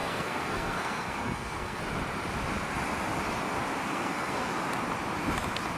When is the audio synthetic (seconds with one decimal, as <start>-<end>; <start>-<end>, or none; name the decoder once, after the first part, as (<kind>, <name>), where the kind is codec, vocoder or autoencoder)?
0.0-1.8 (codec, SNAC); 3.9-4.5